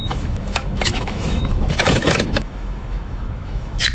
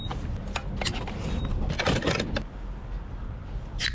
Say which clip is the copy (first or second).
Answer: first